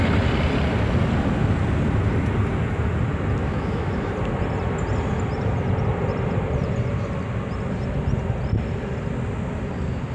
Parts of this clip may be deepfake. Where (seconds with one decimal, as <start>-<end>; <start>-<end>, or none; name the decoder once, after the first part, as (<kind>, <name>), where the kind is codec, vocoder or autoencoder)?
3.4-4.1 (autoencoder, DAC-VAE)